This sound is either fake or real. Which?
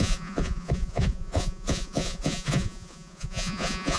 fake